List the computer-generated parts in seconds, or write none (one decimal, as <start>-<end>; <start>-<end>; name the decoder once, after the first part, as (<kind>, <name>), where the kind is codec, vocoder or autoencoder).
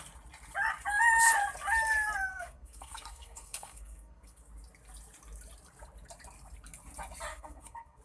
2.3-4.5 (codec, SNAC); 7.3-8.0